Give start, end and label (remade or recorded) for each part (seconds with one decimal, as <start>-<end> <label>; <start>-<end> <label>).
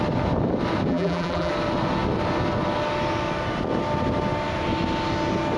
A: 0.0-0.9 recorded; 0.9-1.5 remade; 1.5-5.6 recorded